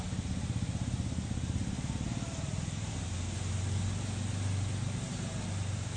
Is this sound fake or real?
real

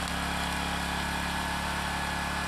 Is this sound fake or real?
real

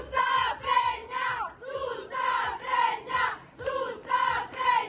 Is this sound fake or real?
fake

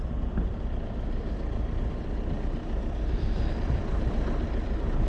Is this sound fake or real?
real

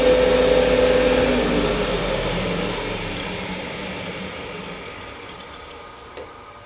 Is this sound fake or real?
real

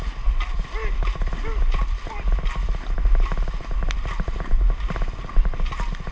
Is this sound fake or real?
real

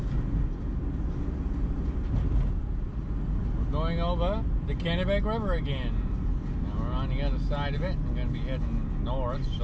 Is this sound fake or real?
real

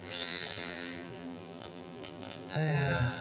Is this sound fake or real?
fake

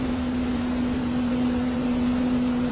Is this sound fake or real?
fake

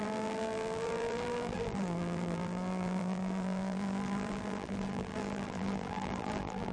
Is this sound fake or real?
fake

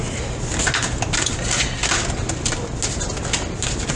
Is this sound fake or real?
real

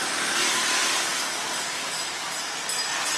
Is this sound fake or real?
real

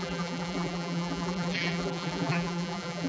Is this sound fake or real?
fake